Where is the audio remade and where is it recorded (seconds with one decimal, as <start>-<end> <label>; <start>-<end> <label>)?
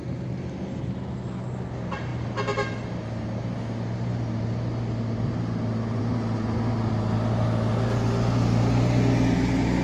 0.0-9.8 recorded